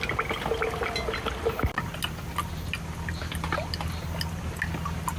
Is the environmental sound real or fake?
real